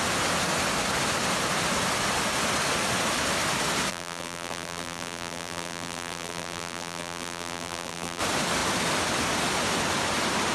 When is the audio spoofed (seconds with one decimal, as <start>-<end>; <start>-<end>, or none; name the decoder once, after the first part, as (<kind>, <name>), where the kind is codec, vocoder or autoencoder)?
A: 3.9-8.2 (vocoder, BigVGAN v2)